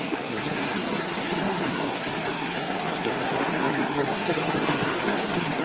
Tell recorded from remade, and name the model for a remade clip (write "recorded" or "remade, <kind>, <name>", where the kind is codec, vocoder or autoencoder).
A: remade, codec, SNAC